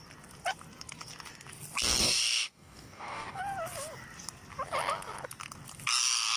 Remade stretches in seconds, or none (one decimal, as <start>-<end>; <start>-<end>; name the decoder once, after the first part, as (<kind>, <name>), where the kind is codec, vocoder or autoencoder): 2.0-3.4 (codec, DAC)